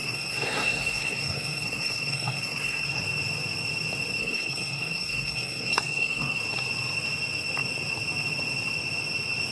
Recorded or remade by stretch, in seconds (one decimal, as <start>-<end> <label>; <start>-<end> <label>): 0.0-3.0 remade; 3.0-4.2 recorded; 4.2-6.4 remade; 6.4-9.5 recorded